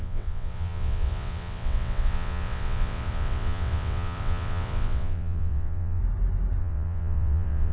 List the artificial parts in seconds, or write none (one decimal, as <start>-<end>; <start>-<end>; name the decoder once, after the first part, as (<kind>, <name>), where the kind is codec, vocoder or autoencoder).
0.0-6.0 (vocoder, WaveNeXt); 6.6-7.7